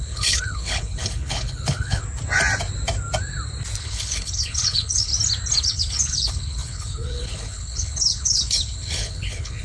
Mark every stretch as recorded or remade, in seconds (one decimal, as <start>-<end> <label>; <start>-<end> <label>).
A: 0.0-2.0 remade; 2.0-3.8 recorded; 3.8-5.1 remade; 5.1-5.6 recorded; 5.6-9.6 remade